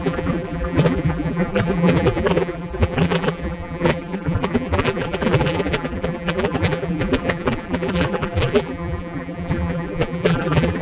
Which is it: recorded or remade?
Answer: remade